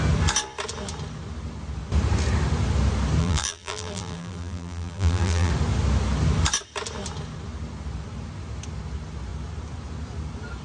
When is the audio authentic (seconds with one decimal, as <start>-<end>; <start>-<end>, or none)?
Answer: 0.0-3.2; 5.5-10.6